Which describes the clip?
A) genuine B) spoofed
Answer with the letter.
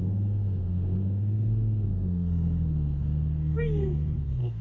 B